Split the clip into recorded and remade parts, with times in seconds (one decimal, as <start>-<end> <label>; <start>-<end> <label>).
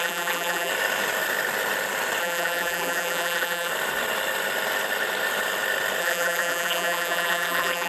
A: 0.0-0.7 remade; 0.7-2.2 recorded; 2.2-3.7 remade; 3.7-6.0 recorded; 6.0-7.9 remade